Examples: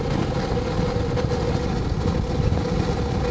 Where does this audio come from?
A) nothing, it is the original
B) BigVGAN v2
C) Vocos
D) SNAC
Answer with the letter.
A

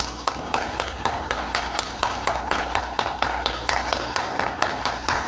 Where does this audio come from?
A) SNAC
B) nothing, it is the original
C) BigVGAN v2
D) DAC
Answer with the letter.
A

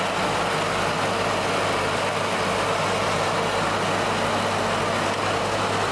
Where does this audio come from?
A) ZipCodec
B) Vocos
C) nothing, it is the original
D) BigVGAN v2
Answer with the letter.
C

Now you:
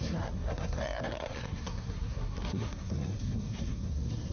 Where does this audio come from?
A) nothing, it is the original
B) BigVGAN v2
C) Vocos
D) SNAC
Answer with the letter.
D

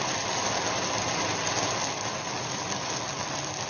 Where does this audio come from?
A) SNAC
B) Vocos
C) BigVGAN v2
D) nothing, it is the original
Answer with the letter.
D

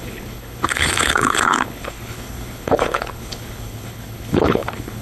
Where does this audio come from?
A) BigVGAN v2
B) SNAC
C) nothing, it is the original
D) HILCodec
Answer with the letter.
D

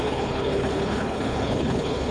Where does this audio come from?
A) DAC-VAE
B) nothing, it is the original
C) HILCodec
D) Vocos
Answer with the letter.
C